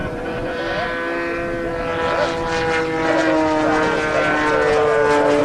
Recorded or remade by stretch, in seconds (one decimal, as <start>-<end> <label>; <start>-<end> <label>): 0.0-0.6 remade; 0.6-5.4 recorded